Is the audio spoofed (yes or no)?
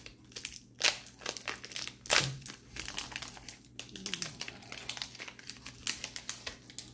no